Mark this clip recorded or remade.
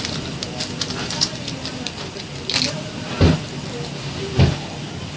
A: recorded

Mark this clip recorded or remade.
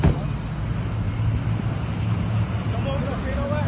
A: recorded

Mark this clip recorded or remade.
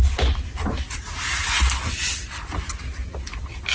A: recorded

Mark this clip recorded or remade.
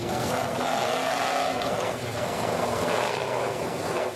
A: remade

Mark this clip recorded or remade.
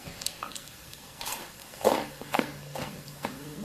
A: remade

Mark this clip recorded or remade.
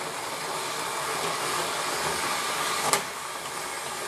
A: recorded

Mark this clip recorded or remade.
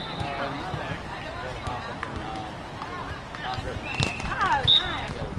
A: recorded